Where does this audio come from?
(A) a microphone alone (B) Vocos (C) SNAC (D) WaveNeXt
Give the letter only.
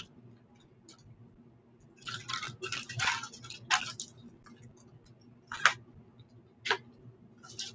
A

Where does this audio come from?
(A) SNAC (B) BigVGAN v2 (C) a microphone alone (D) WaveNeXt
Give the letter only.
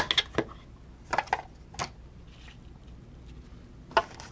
C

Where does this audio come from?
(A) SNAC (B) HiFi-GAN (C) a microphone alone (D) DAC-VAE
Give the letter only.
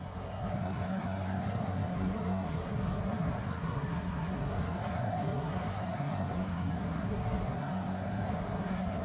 A